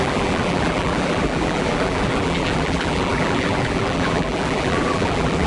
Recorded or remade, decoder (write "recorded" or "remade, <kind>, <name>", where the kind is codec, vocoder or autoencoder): remade, vocoder, BigVGAN v2